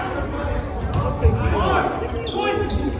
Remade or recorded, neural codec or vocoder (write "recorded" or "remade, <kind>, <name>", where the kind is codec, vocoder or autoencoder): recorded